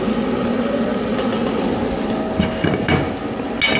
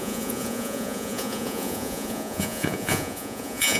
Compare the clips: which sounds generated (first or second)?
second